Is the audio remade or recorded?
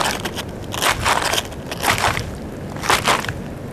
recorded